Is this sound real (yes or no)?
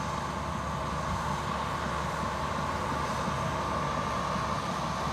yes